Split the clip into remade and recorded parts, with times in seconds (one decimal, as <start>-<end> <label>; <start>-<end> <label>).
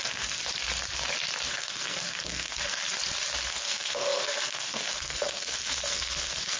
0.0-0.4 remade; 0.4-1.5 recorded; 1.5-2.8 remade; 2.8-3.5 recorded; 3.5-6.6 remade